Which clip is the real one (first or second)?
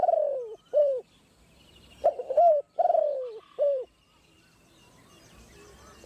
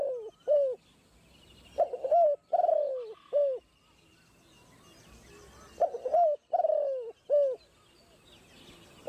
second